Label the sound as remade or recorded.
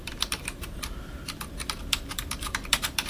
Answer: remade